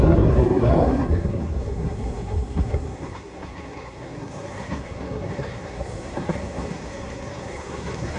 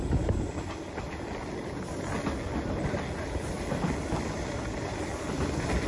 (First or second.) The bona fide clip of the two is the second